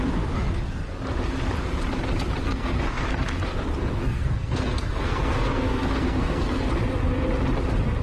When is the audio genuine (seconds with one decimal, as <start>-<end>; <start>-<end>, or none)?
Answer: 0.0-2.4; 3.2-4.0; 6.7-8.0